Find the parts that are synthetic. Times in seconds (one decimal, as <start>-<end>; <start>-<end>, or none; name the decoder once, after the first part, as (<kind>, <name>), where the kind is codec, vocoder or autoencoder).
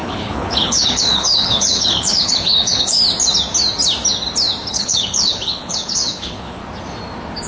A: 0.0-3.0 (codec, HILCodec); 4.7-6.6